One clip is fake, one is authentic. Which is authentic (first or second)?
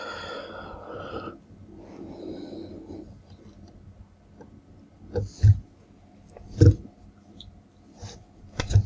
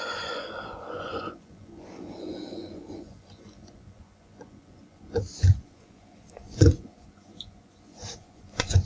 first